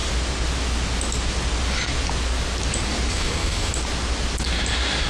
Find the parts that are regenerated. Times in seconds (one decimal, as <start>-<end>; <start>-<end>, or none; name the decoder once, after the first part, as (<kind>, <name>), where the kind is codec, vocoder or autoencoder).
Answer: 3.1-3.7 (codec, SNAC)